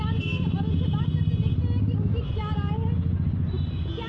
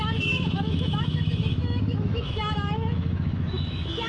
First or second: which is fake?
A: second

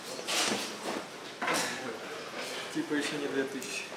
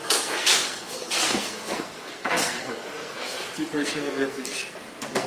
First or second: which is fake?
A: second